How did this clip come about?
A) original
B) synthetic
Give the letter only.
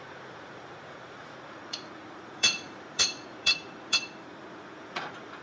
B